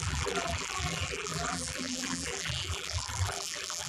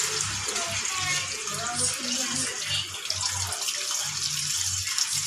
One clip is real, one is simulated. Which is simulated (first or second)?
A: first